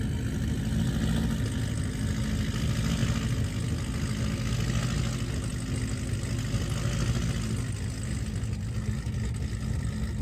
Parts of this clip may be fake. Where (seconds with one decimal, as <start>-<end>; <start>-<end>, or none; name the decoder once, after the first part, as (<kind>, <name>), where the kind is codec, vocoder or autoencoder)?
none